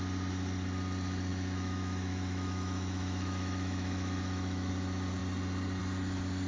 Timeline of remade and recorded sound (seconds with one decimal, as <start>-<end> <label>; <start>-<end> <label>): 0.0-1.3 recorded; 1.3-4.7 remade; 4.7-6.5 recorded

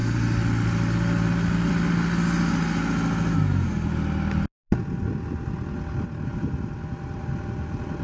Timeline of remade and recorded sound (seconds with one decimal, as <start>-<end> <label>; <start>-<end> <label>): 0.0-1.7 remade; 1.7-8.0 recorded

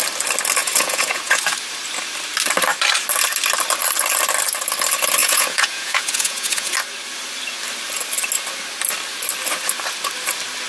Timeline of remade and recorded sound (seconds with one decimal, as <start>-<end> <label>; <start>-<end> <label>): 0.0-0.6 recorded; 0.6-1.4 remade; 1.4-5.2 recorded; 5.2-6.7 remade; 6.7-10.7 recorded